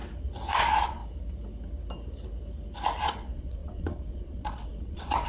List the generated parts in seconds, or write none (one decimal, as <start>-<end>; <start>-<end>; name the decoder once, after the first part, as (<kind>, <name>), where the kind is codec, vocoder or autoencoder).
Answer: 0.5-1.0 (vocoder, Vocos); 3.0-5.3